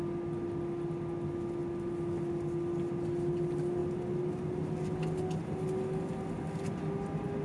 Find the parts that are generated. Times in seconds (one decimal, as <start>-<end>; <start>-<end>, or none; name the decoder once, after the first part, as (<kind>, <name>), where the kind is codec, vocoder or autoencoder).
none